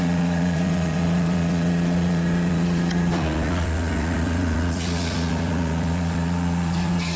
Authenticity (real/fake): fake